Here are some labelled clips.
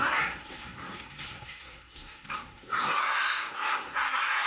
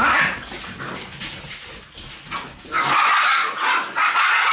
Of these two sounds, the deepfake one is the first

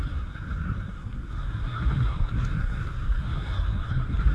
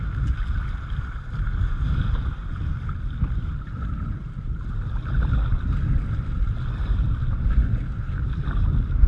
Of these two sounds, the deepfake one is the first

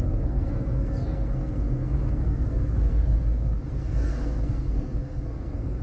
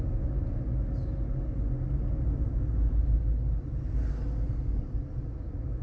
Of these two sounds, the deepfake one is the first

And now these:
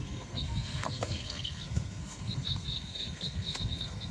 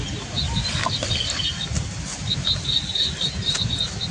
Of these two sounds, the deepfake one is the first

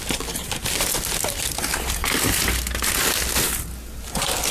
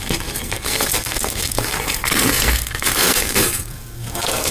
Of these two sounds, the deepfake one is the second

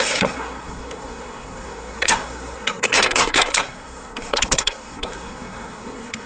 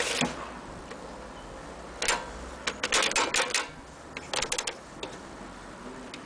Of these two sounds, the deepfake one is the first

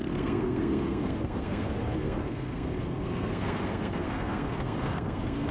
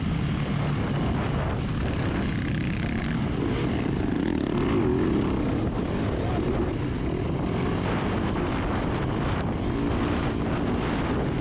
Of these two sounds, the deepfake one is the first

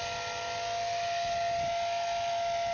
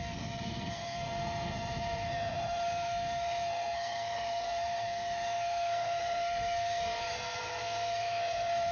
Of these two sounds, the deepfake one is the second